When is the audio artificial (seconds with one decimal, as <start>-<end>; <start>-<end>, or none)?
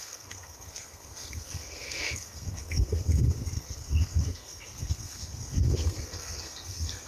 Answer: 0.0-7.1